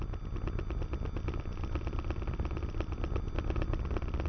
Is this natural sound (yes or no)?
yes